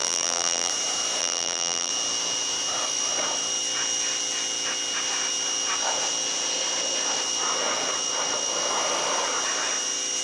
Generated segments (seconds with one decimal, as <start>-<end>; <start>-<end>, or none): 0.0-0.7; 1.2-1.9